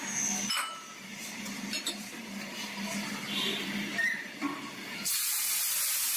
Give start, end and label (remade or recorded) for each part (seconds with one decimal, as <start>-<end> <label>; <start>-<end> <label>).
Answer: 0.0-0.7 recorded; 0.7-2.2 remade; 2.2-3.9 recorded; 3.9-5.0 remade; 5.0-6.2 recorded